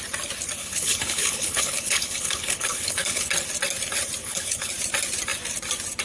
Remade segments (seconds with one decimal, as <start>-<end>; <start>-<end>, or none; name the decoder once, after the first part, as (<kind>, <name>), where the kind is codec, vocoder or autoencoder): 0.6-3.3 (codec, HILCodec); 4.2-4.7